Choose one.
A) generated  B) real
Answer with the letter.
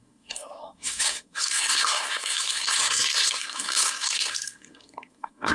A